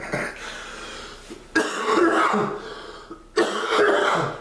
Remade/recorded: recorded